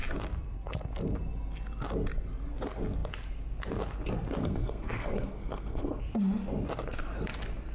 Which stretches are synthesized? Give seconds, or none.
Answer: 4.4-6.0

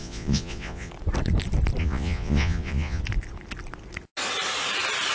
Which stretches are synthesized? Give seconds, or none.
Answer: 0.0-0.9; 1.8-3.0